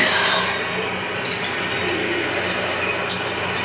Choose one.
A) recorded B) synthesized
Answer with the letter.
A